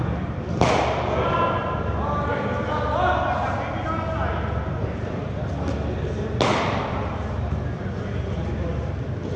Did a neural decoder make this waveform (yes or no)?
no